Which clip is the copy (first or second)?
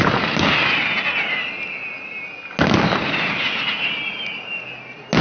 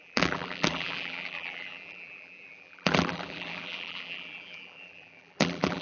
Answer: second